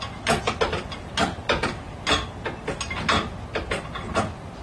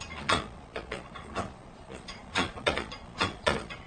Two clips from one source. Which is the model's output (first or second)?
second